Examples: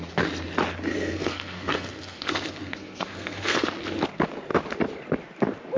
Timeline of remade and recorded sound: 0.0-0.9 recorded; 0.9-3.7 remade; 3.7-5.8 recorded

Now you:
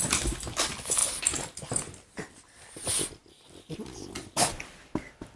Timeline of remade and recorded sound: 0.0-5.4 recorded

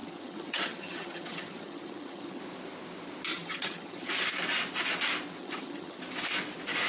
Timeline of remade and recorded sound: 0.0-2.4 remade; 2.4-3.3 recorded; 3.3-4.1 remade; 4.1-5.4 recorded; 5.4-6.0 remade; 6.0-6.9 recorded

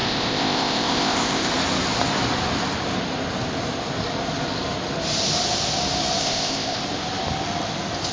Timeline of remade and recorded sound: 0.0-1.5 remade; 1.5-6.2 recorded; 6.2-6.8 remade; 6.8-8.1 recorded

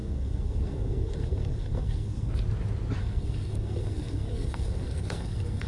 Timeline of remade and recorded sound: 0.0-2.3 remade; 2.3-3.0 recorded; 3.0-5.7 remade

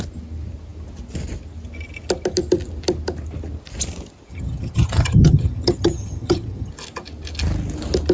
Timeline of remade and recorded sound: 0.0-4.3 recorded; 4.3-6.7 remade; 6.7-8.1 recorded